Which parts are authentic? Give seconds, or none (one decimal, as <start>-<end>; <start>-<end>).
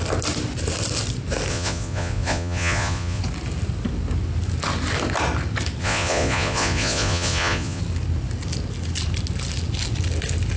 0.0-1.5; 3.2-5.8; 7.8-10.6